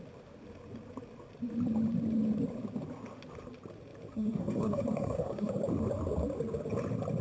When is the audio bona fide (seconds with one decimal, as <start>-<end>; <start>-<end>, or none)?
0.0-4.1; 5.5-7.2